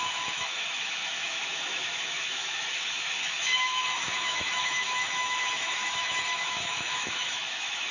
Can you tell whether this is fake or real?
fake